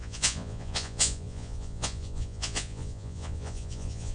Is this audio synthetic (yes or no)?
yes